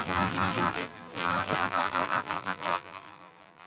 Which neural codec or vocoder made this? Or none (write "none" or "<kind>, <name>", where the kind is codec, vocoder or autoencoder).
vocoder, BigVGAN v2